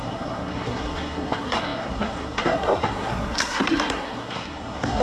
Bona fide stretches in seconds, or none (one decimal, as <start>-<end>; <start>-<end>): none